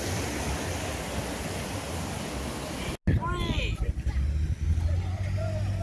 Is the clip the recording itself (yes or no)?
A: yes